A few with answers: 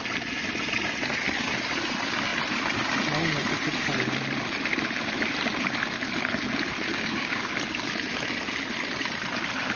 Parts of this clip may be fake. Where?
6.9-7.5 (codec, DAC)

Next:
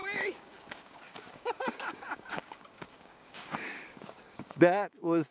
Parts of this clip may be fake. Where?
0.0-5.3 (codec, DAC)

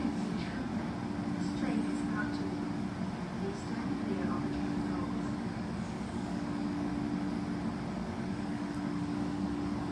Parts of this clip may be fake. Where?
0.0-0.7 (codec, DAC); 4.5-6.9; 7.9-9.9

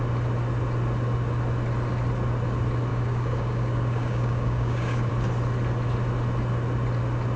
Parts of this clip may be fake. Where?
2.9-5.1 (codec, DAC)

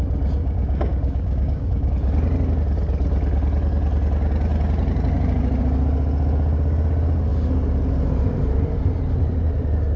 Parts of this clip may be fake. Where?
0.4-1.9 (codec, DAC)